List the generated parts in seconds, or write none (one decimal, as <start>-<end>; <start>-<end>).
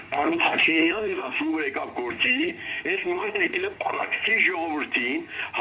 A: 0.0-1.5; 2.1-4.3